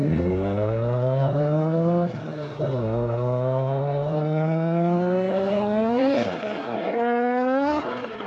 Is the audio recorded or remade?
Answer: remade